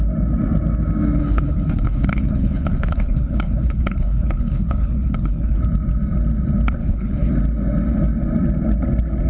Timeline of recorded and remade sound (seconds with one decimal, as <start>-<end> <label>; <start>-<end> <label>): 0.0-1.2 recorded; 1.2-5.6 remade; 5.6-6.8 recorded; 6.8-7.3 remade; 7.3-9.3 recorded